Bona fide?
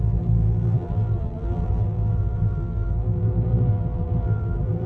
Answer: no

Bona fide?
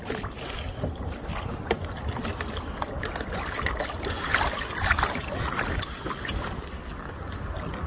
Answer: yes